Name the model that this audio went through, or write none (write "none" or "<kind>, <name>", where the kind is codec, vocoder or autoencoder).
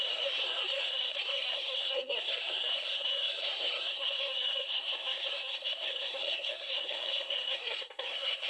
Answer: codec, SNAC